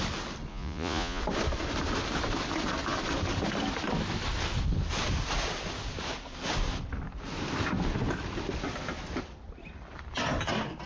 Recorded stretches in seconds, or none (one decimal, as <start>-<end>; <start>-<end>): 0.0-0.5; 1.2-10.9